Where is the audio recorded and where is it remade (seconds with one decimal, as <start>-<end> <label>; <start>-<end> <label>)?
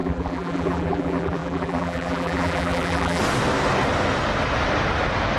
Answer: 0.0-3.2 remade; 3.2-5.4 recorded